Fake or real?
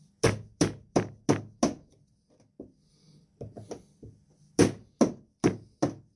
real